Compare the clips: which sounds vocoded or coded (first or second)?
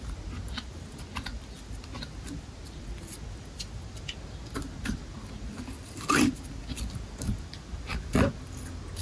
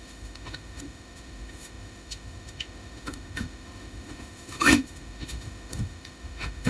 second